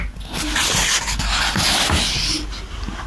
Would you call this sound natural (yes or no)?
yes